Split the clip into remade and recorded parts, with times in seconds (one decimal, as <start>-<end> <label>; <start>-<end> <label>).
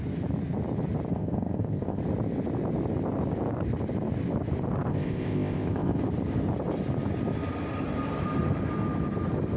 0.0-1.1 recorded; 1.1-2.0 remade; 2.0-4.9 recorded; 4.9-6.0 remade; 6.0-9.6 recorded